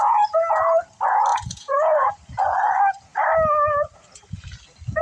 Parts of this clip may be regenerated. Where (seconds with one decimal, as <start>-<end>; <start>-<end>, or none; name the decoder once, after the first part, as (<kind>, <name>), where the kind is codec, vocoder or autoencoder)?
1.3-2.1 (vocoder, Vocos)